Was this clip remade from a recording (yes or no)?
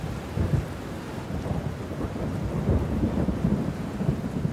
no